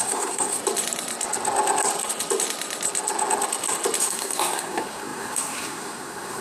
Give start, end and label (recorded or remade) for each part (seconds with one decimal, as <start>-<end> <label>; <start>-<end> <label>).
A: 0.0-0.6 remade; 0.6-4.0 recorded; 4.0-6.4 remade